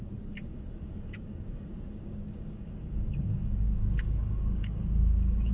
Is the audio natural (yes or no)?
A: no